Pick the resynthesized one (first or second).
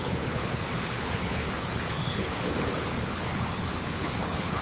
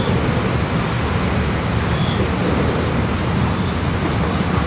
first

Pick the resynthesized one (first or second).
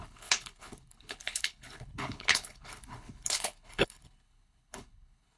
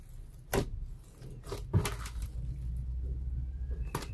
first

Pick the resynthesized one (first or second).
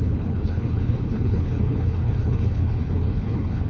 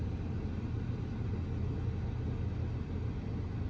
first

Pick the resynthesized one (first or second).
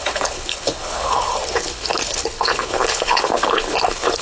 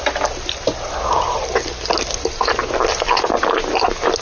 first